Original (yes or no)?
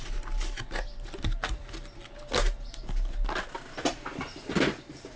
yes